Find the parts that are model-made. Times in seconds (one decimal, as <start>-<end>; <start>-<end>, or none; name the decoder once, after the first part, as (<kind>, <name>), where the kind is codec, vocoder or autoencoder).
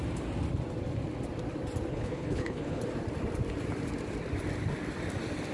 1.9-2.8 (codec, HILCodec)